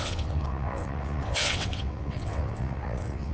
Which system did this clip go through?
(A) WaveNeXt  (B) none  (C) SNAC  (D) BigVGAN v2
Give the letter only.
A